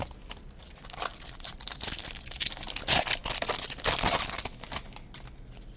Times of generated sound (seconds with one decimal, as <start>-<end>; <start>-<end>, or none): 1.1-2.0